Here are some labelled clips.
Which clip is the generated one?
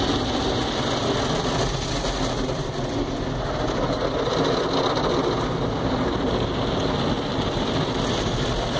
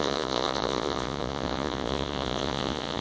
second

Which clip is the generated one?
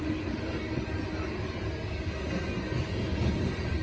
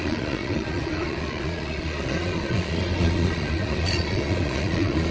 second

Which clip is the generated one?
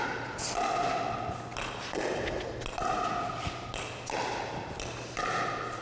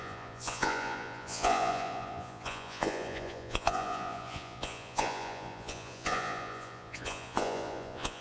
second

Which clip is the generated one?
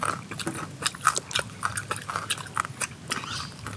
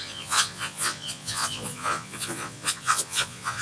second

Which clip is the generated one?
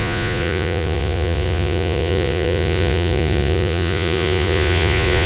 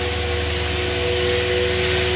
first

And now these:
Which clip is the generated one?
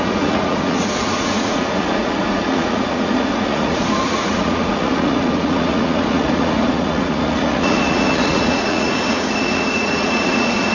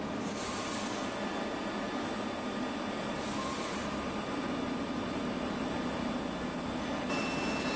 first